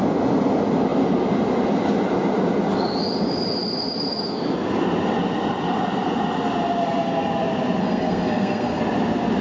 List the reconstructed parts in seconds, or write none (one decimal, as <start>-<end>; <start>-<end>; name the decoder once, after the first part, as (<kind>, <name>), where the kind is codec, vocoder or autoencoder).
7.8-8.8 (codec, SNAC)

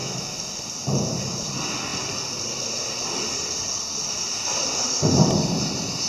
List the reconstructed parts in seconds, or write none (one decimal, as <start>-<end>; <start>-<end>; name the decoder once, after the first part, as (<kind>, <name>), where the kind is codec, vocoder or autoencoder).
0.0-0.5 (autoencoder, DAC-VAE)

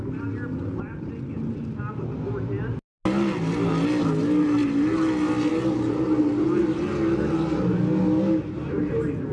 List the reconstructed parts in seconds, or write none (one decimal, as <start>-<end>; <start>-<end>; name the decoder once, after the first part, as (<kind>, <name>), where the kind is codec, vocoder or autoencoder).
none

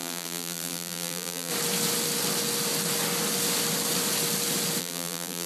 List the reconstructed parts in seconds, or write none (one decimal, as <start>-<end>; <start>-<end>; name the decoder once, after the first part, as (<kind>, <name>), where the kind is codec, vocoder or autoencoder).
0.0-1.5 (vocoder, BigVGAN v2); 4.8-5.5